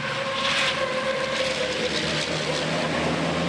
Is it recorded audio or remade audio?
recorded